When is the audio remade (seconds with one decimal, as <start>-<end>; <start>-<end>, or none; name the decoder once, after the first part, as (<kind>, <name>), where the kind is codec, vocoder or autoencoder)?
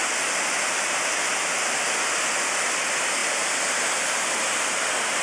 none